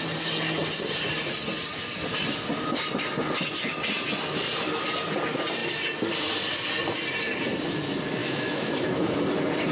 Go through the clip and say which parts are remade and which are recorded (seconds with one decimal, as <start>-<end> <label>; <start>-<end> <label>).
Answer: 0.0-8.2 recorded; 8.2-9.0 remade; 9.0-9.7 recorded